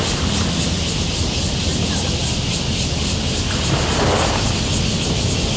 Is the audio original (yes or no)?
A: yes